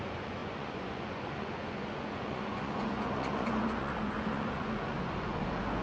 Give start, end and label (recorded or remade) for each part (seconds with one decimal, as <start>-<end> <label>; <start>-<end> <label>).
0.0-5.8 remade